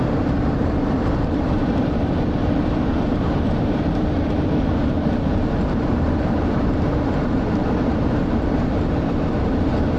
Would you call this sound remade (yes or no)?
yes